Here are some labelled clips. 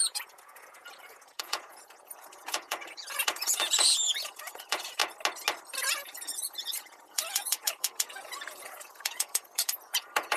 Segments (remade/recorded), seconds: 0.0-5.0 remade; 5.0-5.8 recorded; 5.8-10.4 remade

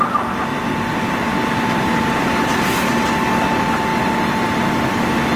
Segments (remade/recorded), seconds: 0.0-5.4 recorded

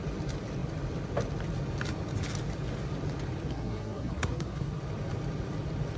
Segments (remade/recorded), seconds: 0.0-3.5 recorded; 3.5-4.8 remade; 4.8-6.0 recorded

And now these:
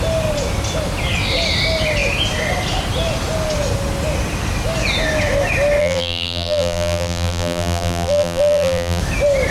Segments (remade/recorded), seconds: 0.0-5.8 recorded; 5.8-9.0 remade; 9.0-9.5 recorded